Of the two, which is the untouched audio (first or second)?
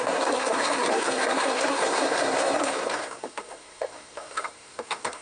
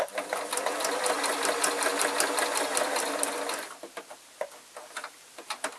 second